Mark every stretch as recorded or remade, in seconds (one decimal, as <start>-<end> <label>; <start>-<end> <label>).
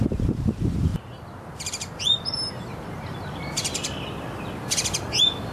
0.0-5.5 recorded